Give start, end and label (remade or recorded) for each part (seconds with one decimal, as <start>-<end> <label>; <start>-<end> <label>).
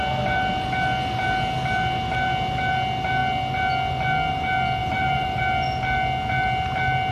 0.0-4.8 recorded; 4.8-5.4 remade; 5.4-7.1 recorded